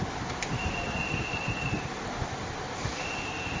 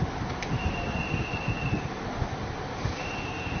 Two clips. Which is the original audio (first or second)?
second